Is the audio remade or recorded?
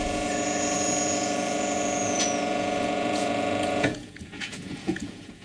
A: remade